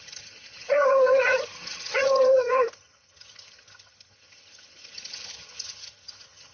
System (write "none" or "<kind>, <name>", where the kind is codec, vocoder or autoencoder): vocoder, HiFi-GAN